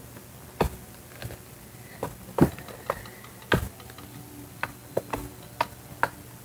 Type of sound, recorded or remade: recorded